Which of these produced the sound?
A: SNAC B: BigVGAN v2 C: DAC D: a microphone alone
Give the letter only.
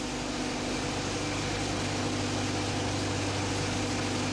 D